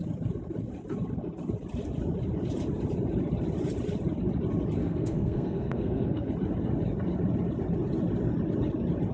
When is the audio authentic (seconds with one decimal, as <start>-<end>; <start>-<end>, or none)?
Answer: 0.0-4.8; 6.3-9.1